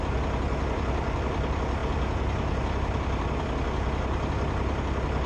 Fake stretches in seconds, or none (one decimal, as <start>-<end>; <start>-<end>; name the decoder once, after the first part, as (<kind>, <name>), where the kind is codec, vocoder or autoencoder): none